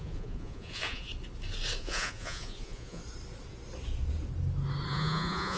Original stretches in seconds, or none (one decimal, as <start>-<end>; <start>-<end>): 1.1-1.8; 3.0-4.9